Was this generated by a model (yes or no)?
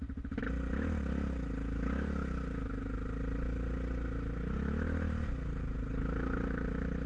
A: no